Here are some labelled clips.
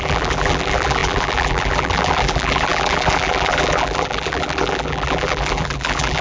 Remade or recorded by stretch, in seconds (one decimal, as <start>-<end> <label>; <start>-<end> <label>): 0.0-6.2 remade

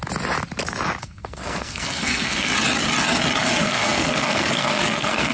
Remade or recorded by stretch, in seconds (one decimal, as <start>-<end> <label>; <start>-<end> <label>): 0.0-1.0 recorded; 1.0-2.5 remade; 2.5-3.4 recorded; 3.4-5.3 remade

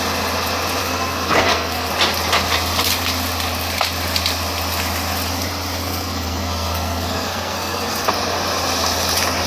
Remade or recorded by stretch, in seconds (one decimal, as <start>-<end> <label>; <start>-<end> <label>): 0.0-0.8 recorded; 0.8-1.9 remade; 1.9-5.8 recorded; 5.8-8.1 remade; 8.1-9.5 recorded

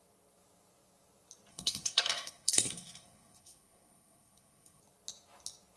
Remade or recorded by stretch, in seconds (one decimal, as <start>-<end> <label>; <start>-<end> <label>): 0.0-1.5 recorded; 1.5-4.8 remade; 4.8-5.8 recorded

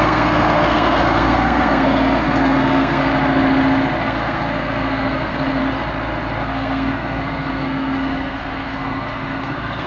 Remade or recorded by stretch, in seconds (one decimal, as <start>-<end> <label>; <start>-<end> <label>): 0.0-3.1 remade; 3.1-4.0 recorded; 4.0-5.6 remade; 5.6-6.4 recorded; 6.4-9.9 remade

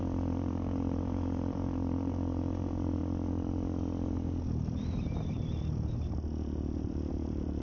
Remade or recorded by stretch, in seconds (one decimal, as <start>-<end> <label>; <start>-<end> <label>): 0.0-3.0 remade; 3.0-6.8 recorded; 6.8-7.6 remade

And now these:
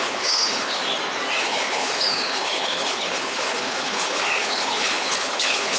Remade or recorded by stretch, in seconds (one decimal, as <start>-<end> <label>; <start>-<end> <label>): 0.0-0.8 remade; 0.8-1.4 recorded; 1.4-5.8 remade